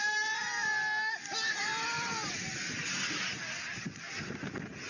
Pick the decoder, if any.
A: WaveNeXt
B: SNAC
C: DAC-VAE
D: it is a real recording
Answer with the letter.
D